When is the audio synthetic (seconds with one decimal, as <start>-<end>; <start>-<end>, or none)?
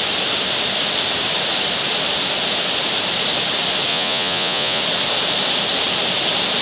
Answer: 3.9-4.8